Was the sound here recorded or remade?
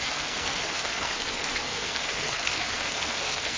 remade